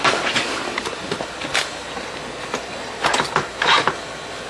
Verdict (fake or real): real